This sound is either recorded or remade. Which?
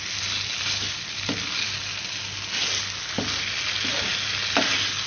recorded